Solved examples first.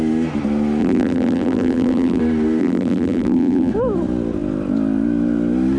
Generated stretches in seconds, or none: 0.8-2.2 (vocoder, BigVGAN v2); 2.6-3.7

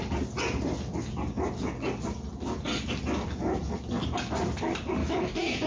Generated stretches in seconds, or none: 5.0-5.7 (autoencoder, DAC-VAE)

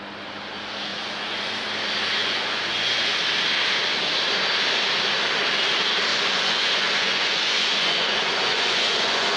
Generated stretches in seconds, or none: 0.9-1.6 (vocoder, Vocos); 2.2-3.2; 6.1-9.4

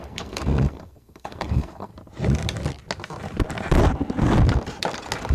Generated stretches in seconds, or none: 0.0-1.9 (codec, SNAC)

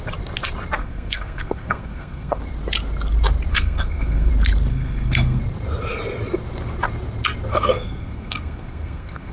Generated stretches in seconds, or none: 0.8-2.4 (codec, SNAC); 3.5-4.3; 4.7-5.4; 7.5-9.3

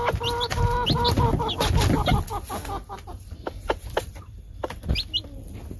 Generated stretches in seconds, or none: 2.8-4.6 (vocoder, BigVGAN v2)